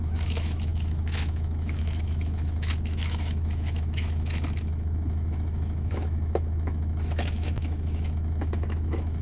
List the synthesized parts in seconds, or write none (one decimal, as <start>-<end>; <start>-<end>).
0.0-9.2